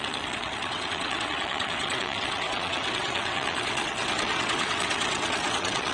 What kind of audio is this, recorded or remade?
remade